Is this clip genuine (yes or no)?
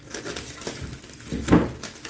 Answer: yes